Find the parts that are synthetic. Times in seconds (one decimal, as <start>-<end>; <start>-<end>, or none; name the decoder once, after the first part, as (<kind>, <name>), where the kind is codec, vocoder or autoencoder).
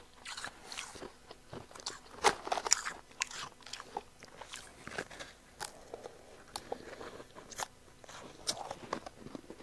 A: 4.7-5.6 (vocoder, BigVGAN v2)